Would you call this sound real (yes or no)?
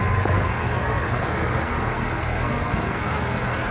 no